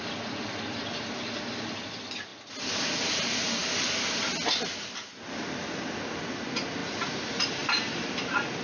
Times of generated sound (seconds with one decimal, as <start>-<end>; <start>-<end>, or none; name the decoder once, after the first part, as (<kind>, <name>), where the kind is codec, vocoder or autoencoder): none